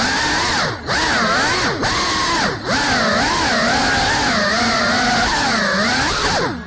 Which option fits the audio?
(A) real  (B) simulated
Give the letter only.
A